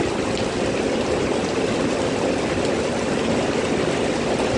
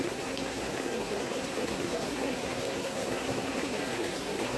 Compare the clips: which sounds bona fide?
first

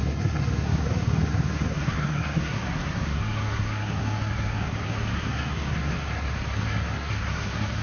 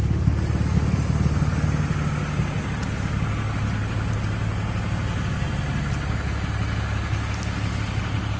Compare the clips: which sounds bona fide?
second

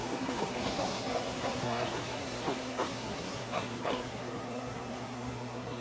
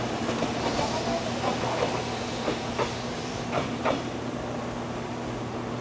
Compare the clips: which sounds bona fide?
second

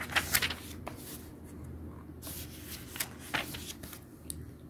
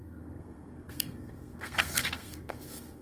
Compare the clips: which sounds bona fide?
first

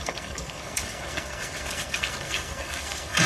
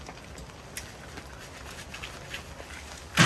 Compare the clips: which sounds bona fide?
second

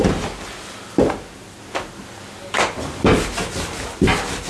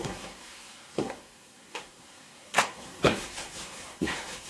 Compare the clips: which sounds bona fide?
first